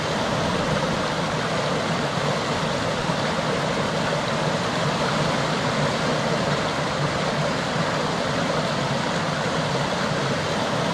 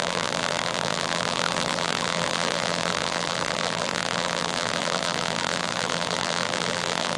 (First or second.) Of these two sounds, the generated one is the second